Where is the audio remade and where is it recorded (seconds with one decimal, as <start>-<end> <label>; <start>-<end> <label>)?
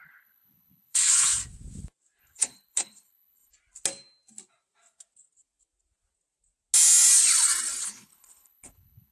0.0-1.4 remade; 1.4-2.2 recorded; 2.2-3.5 remade; 3.5-7.8 recorded; 7.8-9.1 remade